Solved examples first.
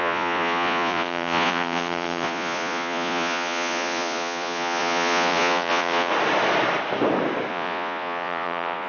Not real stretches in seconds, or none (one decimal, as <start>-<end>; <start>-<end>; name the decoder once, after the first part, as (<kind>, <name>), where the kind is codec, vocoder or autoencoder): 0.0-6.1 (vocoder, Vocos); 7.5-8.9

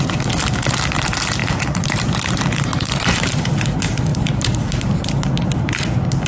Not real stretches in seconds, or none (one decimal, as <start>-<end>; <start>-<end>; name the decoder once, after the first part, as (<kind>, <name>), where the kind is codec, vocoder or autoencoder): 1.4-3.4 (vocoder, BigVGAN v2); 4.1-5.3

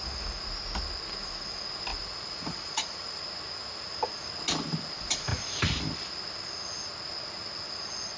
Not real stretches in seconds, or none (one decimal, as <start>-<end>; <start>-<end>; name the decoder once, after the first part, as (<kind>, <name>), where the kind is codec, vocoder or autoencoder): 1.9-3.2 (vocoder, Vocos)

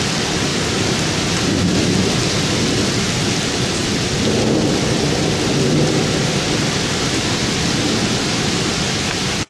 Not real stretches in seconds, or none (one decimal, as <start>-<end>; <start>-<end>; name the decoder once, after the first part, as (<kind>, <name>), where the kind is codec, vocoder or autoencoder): none

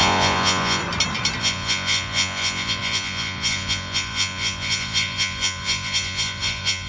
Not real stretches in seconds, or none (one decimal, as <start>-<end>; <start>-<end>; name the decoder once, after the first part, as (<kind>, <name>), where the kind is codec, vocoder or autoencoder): 0.0-0.8 (vocoder, Vocos); 1.4-6.9